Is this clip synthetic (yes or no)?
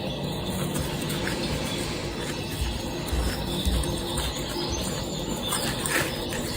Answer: no